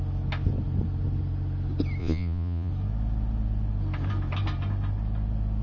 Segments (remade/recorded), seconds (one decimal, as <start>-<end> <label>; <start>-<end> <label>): 0.0-2.0 recorded; 2.0-2.7 remade; 2.7-5.6 recorded